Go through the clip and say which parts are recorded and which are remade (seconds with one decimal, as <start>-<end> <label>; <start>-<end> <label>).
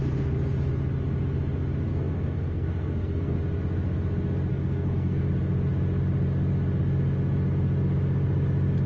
0.0-1.9 recorded; 1.9-3.4 remade; 3.4-4.5 recorded; 4.5-5.3 remade; 5.3-8.9 recorded